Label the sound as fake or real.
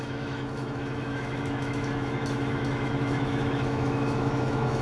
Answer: fake